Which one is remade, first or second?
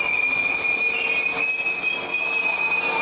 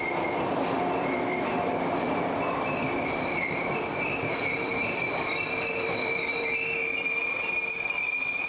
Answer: second